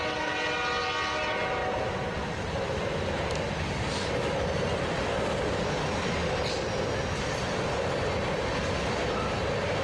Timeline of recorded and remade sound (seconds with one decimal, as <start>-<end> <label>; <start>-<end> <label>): 0.0-9.8 recorded